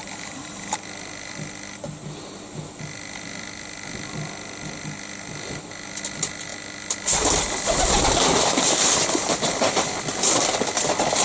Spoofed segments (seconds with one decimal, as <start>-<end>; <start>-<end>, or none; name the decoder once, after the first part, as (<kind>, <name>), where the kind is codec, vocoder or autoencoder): none